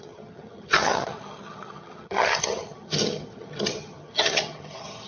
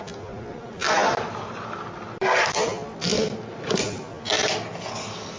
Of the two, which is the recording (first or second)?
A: second